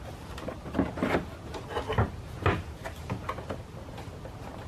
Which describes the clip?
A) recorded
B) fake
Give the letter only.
A